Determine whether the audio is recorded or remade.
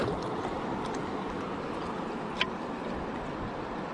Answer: recorded